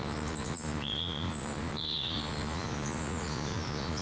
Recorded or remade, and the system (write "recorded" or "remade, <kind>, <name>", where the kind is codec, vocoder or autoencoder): remade, vocoder, Vocos